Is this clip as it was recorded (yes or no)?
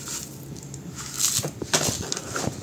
yes